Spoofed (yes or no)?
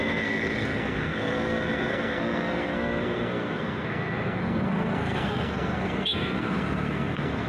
yes